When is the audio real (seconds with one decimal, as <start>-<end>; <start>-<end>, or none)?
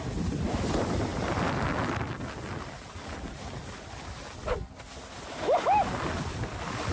0.0-6.9